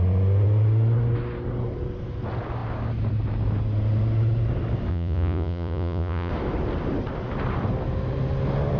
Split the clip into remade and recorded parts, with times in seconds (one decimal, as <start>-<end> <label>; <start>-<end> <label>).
0.0-4.9 recorded; 4.9-6.3 remade; 6.3-8.8 recorded